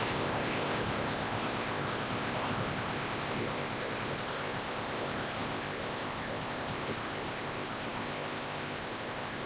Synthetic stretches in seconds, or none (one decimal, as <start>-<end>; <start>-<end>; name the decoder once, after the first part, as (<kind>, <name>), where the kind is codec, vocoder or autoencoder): 0.0-9.5 (codec, ZipCodec)